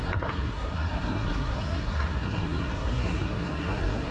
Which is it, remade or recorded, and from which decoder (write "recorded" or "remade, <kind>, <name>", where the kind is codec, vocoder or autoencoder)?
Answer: remade, codec, SNAC